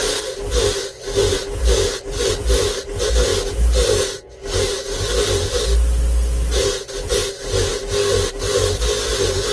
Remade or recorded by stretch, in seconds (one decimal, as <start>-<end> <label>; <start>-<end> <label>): 0.0-9.5 recorded